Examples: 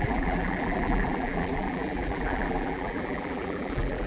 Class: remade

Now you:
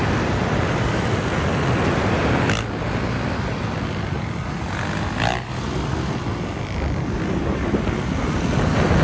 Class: recorded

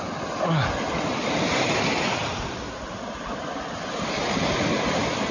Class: recorded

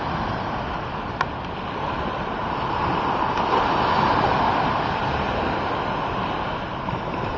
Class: recorded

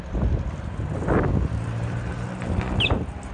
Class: recorded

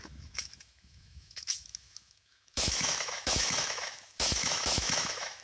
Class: remade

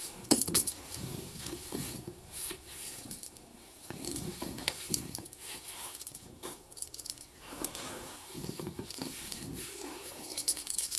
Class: remade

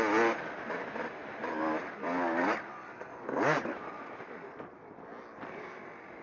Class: recorded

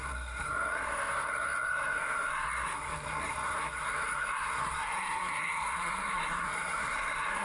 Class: remade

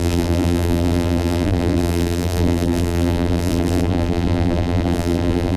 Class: remade